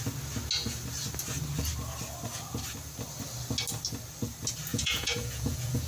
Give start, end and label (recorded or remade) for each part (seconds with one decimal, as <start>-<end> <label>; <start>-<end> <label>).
0.0-4.7 recorded; 4.7-5.9 remade